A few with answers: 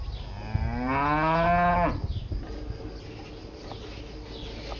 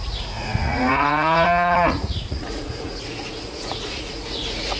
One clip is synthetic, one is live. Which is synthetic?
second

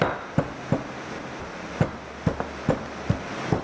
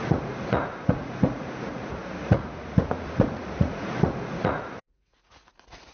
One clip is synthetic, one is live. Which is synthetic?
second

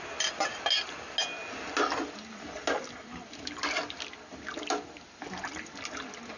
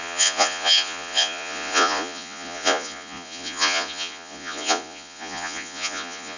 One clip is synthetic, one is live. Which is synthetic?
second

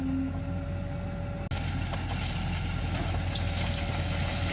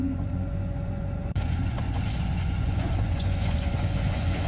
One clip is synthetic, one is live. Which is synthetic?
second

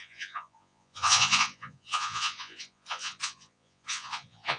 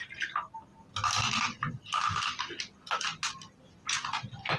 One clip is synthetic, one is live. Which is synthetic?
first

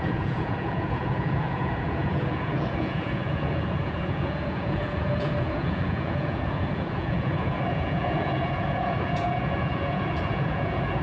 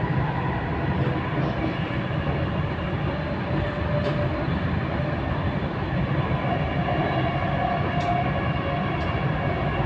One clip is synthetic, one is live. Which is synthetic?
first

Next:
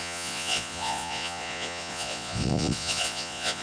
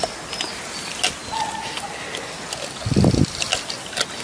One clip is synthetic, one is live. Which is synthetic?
first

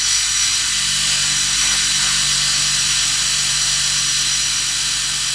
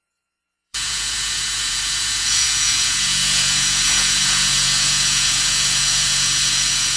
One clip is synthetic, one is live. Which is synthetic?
second